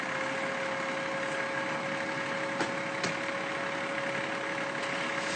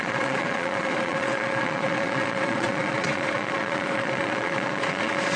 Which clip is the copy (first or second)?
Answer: second